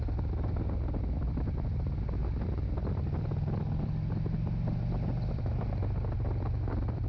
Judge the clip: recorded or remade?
recorded